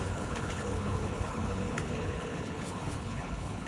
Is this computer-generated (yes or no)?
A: yes